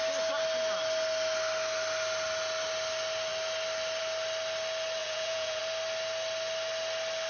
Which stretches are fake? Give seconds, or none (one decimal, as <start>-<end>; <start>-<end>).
5.0-5.6